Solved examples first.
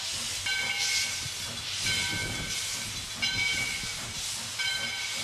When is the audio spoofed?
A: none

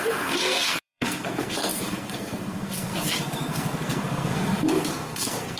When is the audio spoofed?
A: 0.0-5.6 (codec, SNAC)

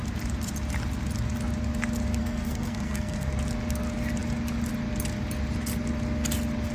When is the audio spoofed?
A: 2.2-3.3 (codec, SNAC)

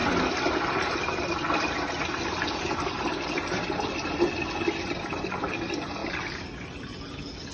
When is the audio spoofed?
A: none